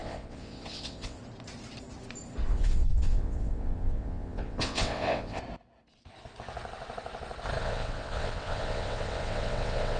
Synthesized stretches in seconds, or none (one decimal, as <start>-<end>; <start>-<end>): 0.0-1.2; 2.5-5.4; 7.6-10.0